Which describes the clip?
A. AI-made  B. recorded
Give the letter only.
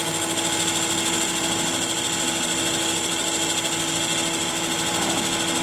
B